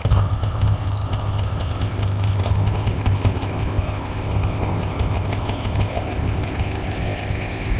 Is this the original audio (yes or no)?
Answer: no